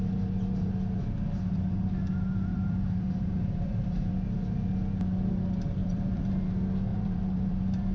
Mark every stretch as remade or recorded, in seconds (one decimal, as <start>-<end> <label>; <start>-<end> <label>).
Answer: 0.0-2.5 recorded; 2.5-4.1 remade; 4.1-5.8 recorded; 5.8-6.3 remade; 6.3-6.9 recorded; 6.9-7.9 remade